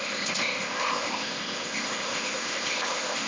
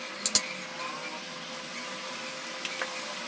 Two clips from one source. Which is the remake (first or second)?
first